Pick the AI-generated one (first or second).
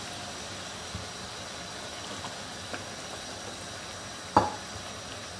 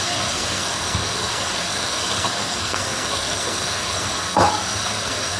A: second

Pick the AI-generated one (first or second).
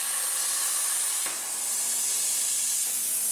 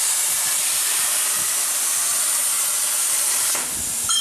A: second